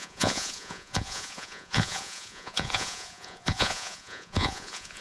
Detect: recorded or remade remade